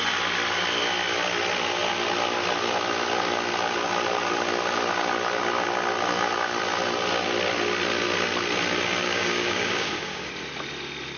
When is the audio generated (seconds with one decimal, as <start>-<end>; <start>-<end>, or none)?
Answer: 9.0-10.3